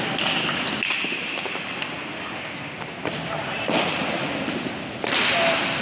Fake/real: real